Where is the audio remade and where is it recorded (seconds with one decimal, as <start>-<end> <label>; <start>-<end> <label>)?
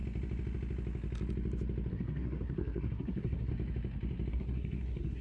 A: 0.0-1.9 recorded; 1.9-3.5 remade; 3.5-4.3 recorded; 4.3-5.2 remade